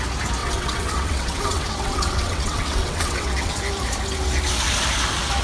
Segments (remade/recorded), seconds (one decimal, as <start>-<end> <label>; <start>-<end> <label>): 0.0-0.4 recorded; 0.4-3.6 remade; 3.6-5.4 recorded